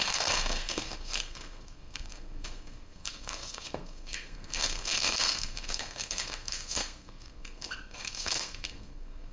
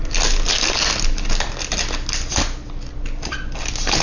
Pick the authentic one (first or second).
second